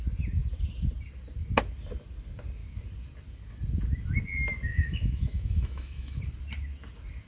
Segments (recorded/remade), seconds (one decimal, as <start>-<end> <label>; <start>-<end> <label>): 0.0-4.7 recorded; 4.7-6.2 remade; 6.2-7.3 recorded